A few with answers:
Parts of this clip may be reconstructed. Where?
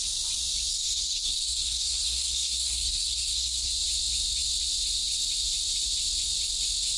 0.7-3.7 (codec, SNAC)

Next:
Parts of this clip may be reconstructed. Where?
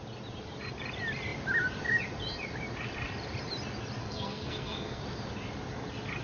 4.0-5.0 (codec, SNAC)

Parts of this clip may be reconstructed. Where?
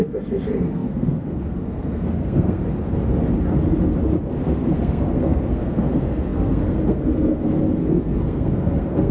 0.0-2.6 (codec, SNAC); 4.4-9.1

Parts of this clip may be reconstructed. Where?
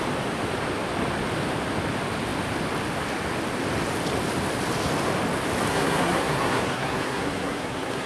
5.7-8.1 (codec, SNAC)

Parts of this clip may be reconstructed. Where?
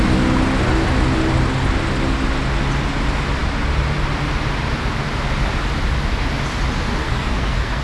7.0-7.8 (codec, SNAC)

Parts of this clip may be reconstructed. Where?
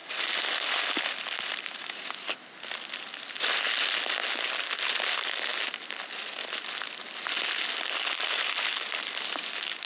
none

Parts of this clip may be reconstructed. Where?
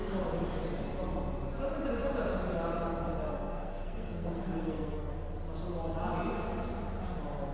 3.3-5.1 (codec, SNAC)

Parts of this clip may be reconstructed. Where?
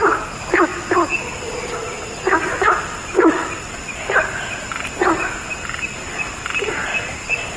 none